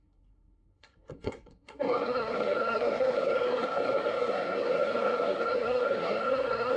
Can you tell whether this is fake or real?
fake